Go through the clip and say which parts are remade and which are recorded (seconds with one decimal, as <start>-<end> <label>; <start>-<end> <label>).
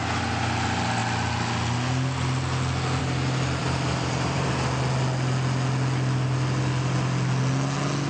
0.0-3.6 recorded; 3.6-4.5 remade; 4.5-8.1 recorded